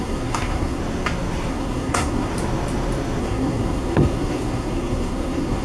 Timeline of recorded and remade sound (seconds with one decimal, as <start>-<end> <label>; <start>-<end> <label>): 0.0-0.8 remade; 0.8-1.5 recorded; 1.5-2.3 remade; 2.3-3.2 recorded; 3.2-5.6 remade